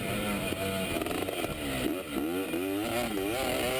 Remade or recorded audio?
recorded